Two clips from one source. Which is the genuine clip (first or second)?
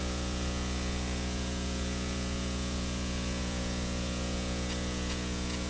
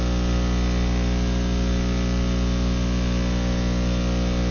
second